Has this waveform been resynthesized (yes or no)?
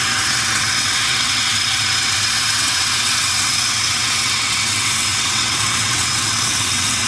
yes